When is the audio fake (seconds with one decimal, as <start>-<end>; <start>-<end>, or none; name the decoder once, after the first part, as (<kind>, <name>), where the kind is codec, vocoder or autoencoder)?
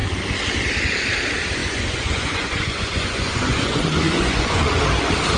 1.6-4.8 (vocoder, Vocos)